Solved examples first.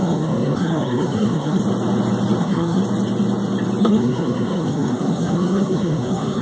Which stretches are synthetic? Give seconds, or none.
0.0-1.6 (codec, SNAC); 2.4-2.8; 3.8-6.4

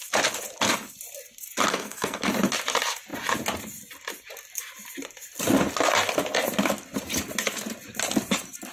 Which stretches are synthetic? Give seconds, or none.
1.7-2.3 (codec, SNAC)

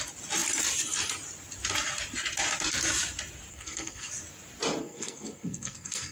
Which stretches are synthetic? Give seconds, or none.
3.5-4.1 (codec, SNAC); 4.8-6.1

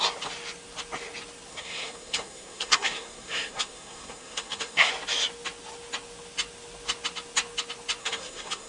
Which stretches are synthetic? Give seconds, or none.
1.5-4.9 (codec, SNAC); 8.0-8.7

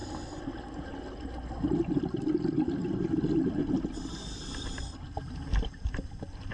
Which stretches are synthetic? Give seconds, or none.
none

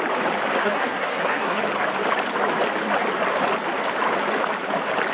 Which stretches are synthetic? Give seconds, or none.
0.6-1.6 (codec, SNAC)

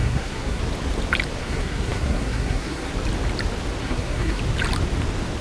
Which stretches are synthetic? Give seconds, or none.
0.0-0.6 (codec, SNAC); 1.4-2.9; 3.8-4.4